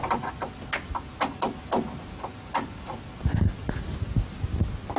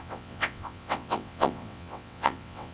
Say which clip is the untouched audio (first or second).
first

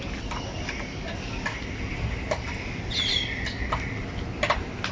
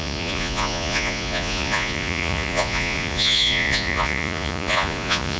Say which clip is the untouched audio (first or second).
first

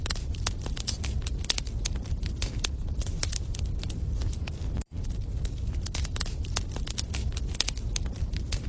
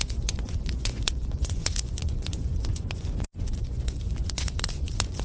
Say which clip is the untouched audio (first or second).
first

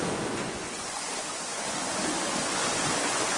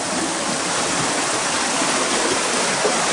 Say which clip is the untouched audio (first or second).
second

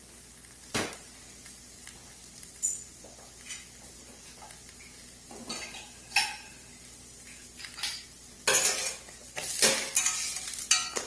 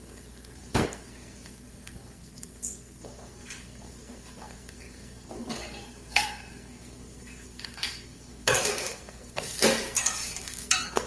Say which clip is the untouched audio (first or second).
first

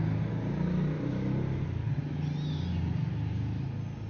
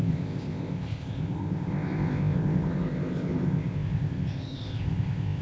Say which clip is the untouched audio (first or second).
first